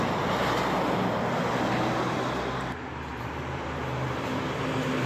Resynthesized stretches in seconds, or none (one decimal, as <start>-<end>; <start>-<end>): 3.1-4.4